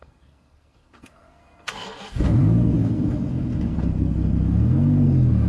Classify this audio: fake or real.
fake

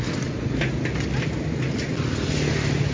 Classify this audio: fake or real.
real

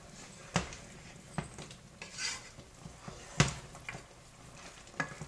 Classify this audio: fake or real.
real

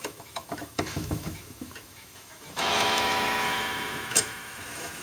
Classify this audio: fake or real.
fake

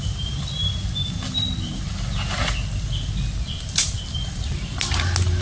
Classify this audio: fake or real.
real